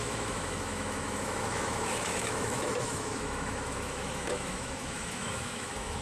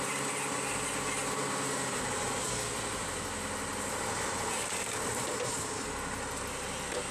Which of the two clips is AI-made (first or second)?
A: first